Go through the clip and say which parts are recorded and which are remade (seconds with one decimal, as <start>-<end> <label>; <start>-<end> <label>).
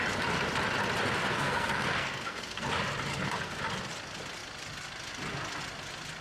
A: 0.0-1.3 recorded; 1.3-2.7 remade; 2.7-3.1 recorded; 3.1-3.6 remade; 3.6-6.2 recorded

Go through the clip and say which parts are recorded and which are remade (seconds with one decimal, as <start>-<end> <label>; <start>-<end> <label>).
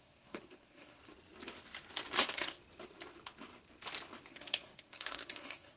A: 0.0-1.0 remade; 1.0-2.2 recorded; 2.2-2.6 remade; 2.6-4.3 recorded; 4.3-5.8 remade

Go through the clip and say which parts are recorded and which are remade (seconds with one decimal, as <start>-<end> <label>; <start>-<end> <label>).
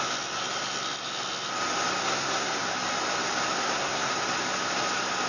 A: 0.0-2.0 recorded; 2.0-2.6 remade; 2.6-3.5 recorded; 3.5-4.1 remade; 4.1-5.3 recorded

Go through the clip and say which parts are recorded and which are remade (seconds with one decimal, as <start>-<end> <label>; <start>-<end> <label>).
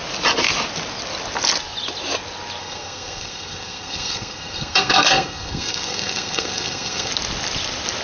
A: 0.0-2.6 recorded; 2.6-7.1 remade; 7.1-8.0 recorded